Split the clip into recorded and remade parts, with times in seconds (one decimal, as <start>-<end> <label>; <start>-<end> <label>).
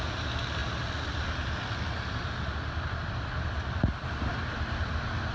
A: 0.0-5.3 recorded